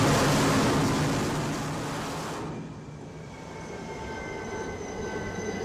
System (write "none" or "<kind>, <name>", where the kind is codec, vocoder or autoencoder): none